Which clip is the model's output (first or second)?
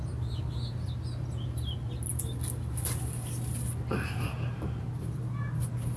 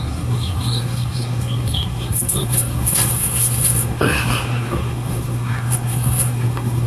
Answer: second